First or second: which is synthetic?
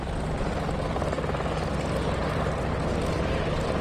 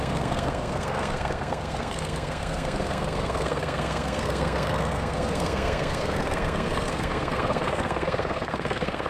second